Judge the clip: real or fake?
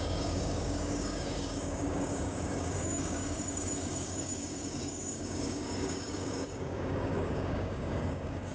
fake